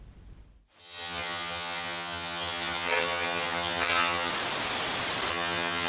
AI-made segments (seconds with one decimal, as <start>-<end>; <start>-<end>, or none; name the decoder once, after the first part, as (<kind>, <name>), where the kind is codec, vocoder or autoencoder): 0.8-4.3 (vocoder, HiFi-GAN); 5.3-5.9